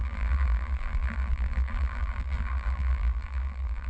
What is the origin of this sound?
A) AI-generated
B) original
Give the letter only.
A